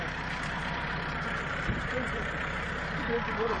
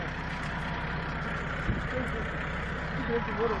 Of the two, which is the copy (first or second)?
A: first